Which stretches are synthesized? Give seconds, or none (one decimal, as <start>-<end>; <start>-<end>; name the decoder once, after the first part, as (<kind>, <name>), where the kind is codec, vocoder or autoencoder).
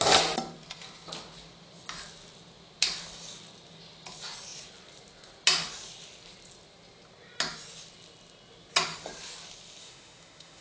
9.8-10.6 (autoencoder, DAC-VAE)